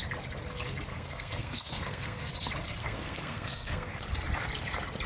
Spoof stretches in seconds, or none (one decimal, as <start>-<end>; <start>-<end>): 0.9-2.3; 2.8-3.9